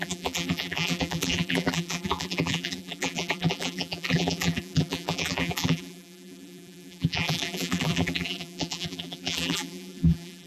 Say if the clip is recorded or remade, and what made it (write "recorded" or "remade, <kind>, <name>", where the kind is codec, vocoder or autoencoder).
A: remade, vocoder, BigVGAN v2